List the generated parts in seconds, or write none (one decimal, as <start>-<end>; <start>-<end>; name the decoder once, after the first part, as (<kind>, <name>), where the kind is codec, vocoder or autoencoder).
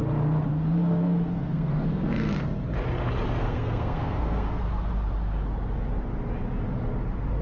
0.5-2.6 (codec, SNAC); 3.4-4.6